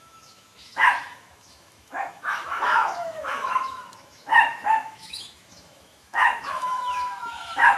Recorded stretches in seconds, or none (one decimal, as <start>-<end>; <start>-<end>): none

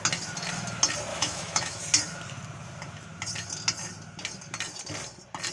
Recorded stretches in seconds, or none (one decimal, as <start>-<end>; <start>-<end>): 0.0-1.1; 1.8-5.5

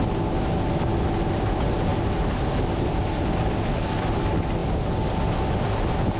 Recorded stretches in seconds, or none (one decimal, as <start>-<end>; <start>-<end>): 0.0-6.2

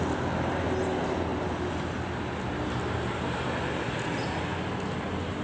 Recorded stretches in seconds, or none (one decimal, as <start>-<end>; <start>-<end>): 0.0-5.4

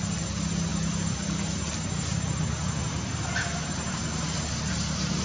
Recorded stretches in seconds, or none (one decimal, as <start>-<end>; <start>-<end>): 0.0-5.2

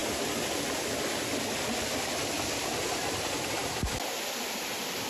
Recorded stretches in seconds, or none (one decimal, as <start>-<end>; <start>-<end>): 0.0-5.1

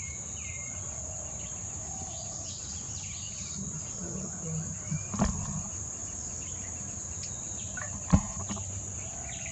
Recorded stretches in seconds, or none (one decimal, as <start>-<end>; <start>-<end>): 0.0-9.5